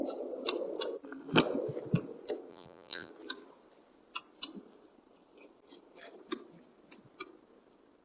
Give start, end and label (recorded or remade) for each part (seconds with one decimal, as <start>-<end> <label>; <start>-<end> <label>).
0.0-2.5 recorded; 2.5-3.1 remade; 3.1-8.0 recorded